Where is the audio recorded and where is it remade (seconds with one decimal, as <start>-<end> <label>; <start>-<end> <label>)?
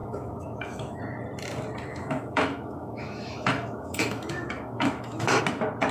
0.0-1.0 remade; 1.0-1.9 recorded; 1.9-5.4 remade; 5.4-5.9 recorded